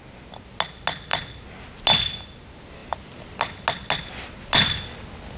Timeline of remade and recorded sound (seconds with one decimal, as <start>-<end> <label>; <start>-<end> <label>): 0.0-5.4 recorded